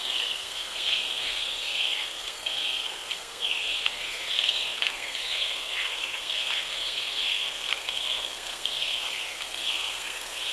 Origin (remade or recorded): remade